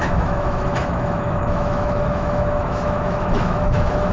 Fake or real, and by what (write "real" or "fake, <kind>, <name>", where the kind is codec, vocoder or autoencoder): fake, autoencoder, DAC-VAE